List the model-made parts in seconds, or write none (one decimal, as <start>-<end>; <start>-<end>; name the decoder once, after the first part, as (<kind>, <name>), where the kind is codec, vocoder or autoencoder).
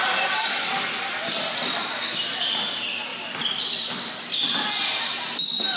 0.0-1.4 (vocoder, BigVGAN v2); 3.1-4.1